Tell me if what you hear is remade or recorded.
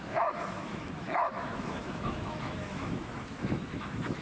remade